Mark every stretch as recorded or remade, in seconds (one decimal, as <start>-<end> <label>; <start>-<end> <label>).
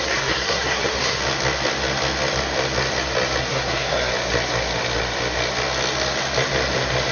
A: 0.0-1.2 remade; 1.2-3.4 recorded; 3.4-4.1 remade; 4.1-7.1 recorded